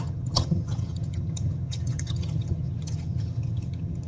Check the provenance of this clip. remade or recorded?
remade